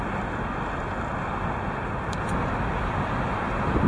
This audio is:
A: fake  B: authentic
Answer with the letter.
B